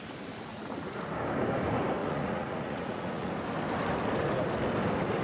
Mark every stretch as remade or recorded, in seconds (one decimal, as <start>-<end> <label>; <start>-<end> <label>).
0.0-0.5 recorded; 0.5-1.1 remade; 1.1-2.0 recorded; 2.0-3.3 remade; 3.3-5.2 recorded